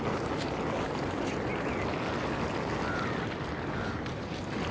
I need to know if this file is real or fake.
real